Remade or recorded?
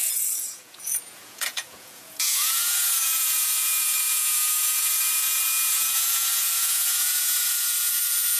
remade